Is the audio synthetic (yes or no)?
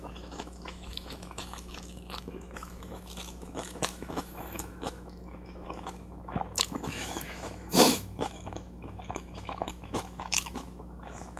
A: yes